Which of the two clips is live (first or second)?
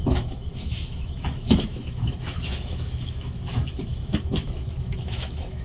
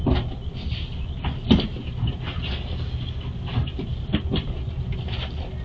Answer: second